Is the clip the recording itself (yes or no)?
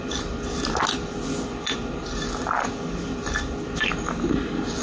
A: yes